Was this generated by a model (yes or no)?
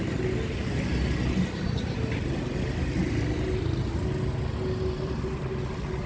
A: no